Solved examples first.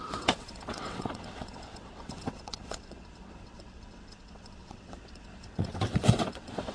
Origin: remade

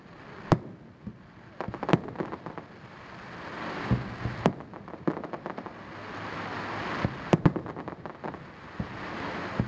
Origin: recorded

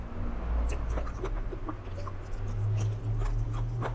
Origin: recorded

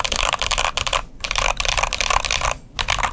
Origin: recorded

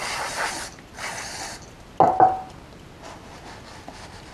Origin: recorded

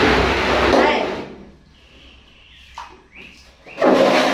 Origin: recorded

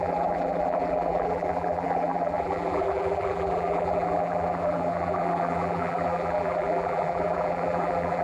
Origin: remade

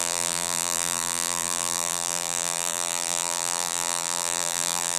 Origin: remade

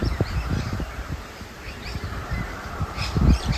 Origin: remade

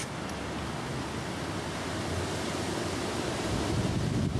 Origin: recorded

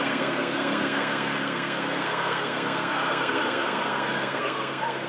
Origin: remade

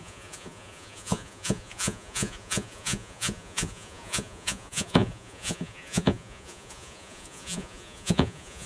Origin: remade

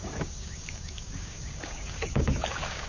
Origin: remade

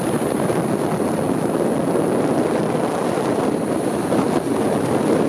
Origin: recorded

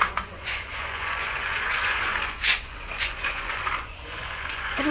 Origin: remade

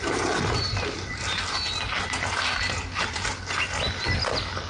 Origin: recorded